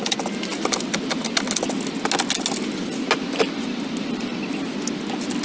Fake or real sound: real